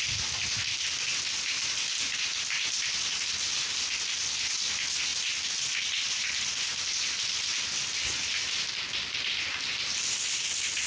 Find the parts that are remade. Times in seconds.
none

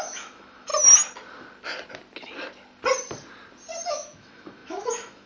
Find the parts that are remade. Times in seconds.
0.0-0.7 (autoencoder, DAC-VAE); 3.9-5.3

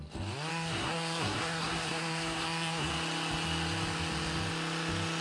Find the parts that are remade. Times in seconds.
0.5-2.9 (codec, SNAC)

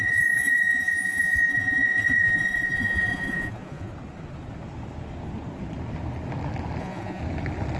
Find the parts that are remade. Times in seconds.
0.0-3.9 (vocoder, Vocos); 6.8-7.2

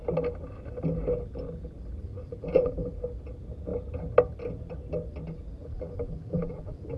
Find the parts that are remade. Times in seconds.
2.1-2.7 (vocoder, BigVGAN v2); 5.6-7.0

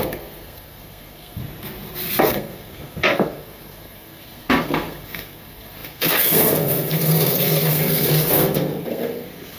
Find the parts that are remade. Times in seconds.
0.0-1.4 (codec, SNAC); 2.2-9.6

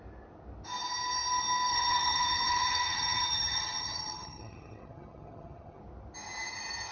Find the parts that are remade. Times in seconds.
1.7-5.8 (vocoder, HiFi-GAN)